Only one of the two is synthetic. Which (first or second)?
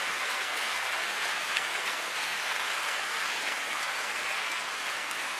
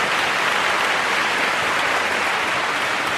first